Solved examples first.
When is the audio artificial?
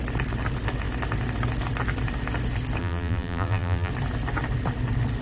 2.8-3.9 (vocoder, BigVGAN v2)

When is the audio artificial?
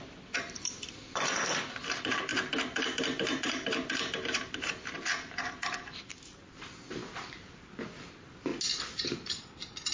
0.0-2.3 (vocoder, BigVGAN v2); 3.0-7.0; 7.8-8.5; 9.0-9.9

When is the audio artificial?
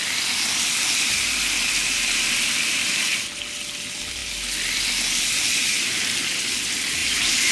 7.0-7.5 (vocoder, BigVGAN v2)